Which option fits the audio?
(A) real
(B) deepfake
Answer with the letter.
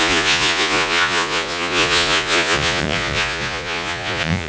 B